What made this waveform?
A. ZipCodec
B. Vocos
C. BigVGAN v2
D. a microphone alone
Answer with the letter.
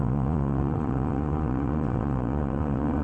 B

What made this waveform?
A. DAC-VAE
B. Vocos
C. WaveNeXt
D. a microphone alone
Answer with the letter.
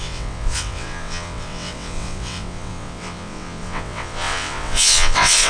C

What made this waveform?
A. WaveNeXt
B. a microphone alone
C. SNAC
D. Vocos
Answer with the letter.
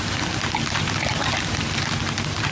B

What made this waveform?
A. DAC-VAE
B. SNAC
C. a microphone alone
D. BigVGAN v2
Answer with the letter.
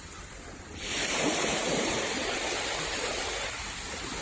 C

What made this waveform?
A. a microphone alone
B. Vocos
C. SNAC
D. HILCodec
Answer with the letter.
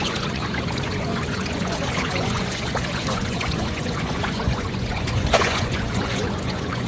B